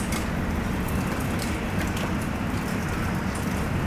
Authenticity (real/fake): real